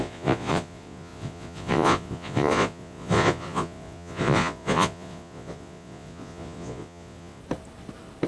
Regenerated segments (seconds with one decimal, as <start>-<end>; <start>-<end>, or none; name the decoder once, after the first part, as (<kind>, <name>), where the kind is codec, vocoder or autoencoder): 0.0-7.4 (vocoder, Vocos)